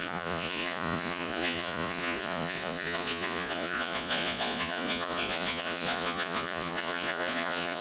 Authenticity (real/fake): fake